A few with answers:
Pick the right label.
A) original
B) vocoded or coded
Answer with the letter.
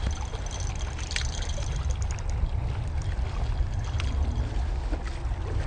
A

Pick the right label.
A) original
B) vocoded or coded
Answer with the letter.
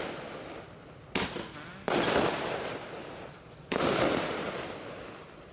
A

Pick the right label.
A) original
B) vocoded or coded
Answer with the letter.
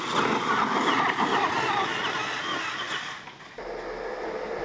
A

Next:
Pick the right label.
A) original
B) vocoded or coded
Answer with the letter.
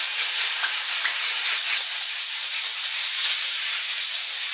B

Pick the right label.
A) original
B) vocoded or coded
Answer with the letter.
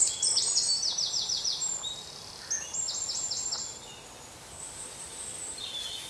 A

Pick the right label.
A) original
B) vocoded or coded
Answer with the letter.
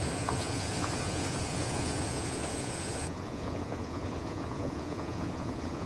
B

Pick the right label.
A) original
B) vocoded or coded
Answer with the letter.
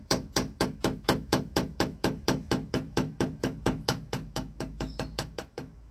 B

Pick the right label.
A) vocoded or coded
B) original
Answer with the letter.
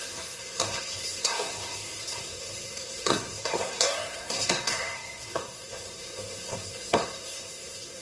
A